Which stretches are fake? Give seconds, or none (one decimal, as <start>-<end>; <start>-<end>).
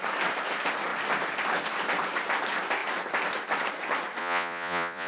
4.2-5.1